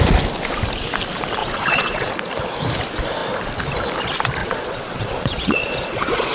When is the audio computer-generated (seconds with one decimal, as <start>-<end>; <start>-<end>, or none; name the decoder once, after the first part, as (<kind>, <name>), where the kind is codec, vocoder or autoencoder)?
1.4-2.1 (vocoder, Vocos); 4.4-6.3